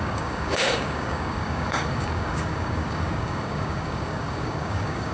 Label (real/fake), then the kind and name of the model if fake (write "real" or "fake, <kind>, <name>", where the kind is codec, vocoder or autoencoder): fake, codec, DAC